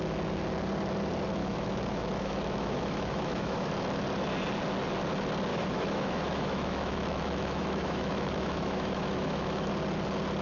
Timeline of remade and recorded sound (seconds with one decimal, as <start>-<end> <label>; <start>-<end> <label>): 0.0-1.4 recorded; 1.4-3.7 remade; 3.7-5.5 recorded; 5.5-9.7 remade; 9.7-10.4 recorded

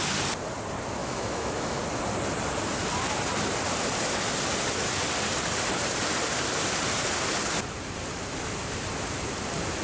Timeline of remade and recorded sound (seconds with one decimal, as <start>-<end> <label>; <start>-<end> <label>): 0.0-1.0 recorded; 1.0-1.8 remade; 1.8-9.8 recorded

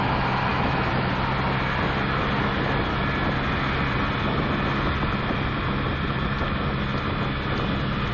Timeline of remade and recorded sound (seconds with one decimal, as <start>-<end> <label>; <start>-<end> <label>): 0.0-0.5 recorded; 0.5-1.1 remade; 1.1-8.1 recorded

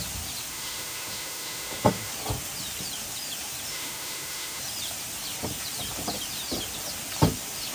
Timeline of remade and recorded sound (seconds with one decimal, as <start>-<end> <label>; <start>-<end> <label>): 0.0-0.5 recorded; 0.5-2.1 remade; 2.1-3.7 recorded; 3.7-4.6 remade; 4.6-7.7 recorded

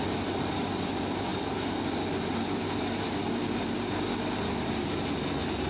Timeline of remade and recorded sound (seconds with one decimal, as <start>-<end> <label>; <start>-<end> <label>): 0.0-5.7 recorded

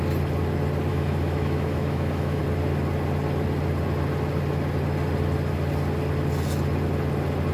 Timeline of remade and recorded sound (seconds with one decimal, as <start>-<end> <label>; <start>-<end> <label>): 0.0-0.9 recorded; 0.9-2.4 remade; 2.4-7.5 recorded